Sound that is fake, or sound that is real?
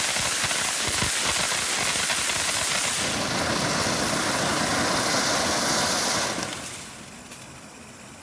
real